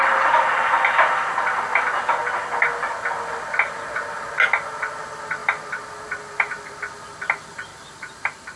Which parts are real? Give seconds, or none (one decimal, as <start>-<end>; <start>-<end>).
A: 0.0-5.4; 6.8-7.7